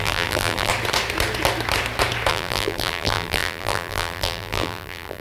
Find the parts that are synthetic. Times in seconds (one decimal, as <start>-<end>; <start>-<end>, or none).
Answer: 0.0-0.7; 2.3-5.2